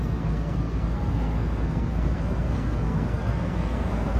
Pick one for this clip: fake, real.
fake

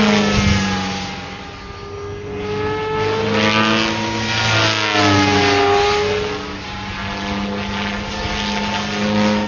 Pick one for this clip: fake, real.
real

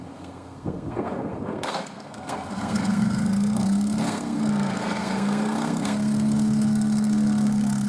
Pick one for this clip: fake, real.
fake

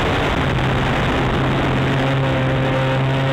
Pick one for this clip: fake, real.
real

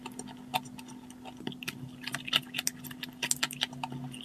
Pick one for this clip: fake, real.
real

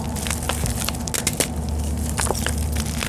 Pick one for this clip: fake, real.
real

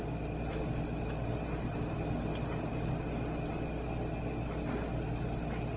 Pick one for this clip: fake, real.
real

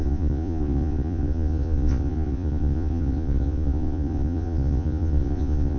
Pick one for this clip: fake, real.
fake